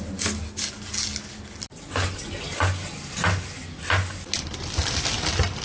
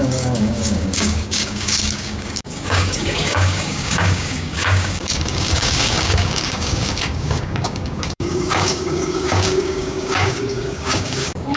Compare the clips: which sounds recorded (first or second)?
first